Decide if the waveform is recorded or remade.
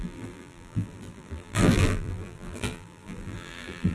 remade